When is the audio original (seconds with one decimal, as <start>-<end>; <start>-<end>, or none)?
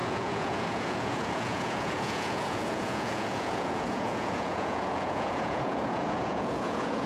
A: none